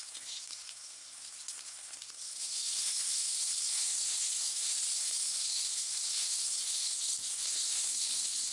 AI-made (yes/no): yes